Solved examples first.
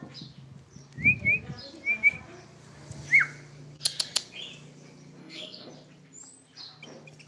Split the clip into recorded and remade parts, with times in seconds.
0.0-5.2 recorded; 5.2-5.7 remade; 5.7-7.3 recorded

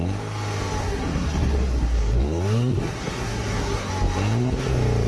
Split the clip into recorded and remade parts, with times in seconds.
0.0-0.8 recorded; 0.8-3.9 remade; 3.9-5.1 recorded

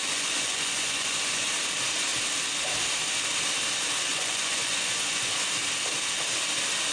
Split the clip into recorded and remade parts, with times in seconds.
0.0-1.5 remade; 1.5-4.1 recorded; 4.1-5.3 remade; 5.3-6.9 recorded

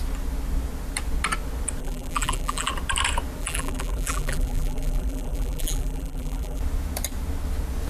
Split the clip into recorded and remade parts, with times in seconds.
0.0-1.8 recorded; 1.8-2.7 remade; 2.7-3.4 recorded; 3.4-6.6 remade; 6.6-7.9 recorded

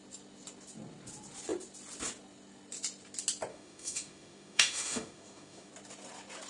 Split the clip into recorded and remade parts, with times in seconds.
0.0-3.5 recorded; 3.5-5.7 remade; 5.7-6.5 recorded

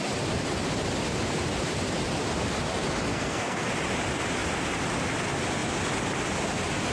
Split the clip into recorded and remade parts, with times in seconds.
0.0-3.1 recorded; 3.1-3.7 remade; 3.7-6.9 recorded

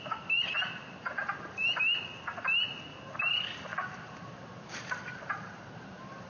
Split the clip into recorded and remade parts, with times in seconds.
0.0-3.7 recorded; 3.7-6.3 remade

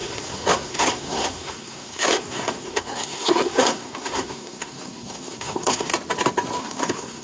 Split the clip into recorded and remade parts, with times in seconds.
0.0-5.9 remade; 5.9-6.6 recorded; 6.6-7.2 remade